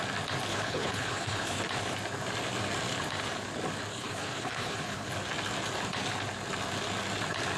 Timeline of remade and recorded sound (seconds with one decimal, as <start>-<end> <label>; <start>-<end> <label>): 0.0-0.5 recorded; 0.5-1.6 remade; 1.6-3.9 recorded; 3.9-5.1 remade; 5.1-7.6 recorded